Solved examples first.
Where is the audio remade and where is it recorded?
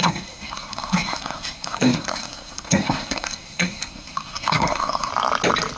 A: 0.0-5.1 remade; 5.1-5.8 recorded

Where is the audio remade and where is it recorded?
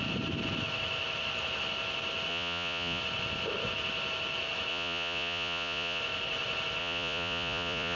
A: 0.0-2.3 recorded; 2.3-3.0 remade; 3.0-4.7 recorded; 4.7-6.0 remade; 6.0-6.8 recorded; 6.8-8.0 remade